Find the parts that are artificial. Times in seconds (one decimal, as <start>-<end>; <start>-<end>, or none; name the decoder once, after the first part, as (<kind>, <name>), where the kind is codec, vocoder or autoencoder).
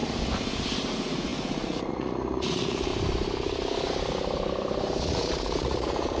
0.9-2.9 (vocoder, Vocos); 5.0-6.2